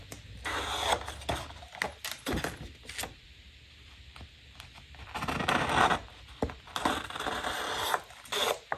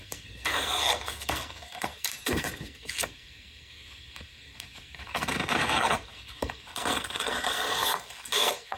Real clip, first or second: first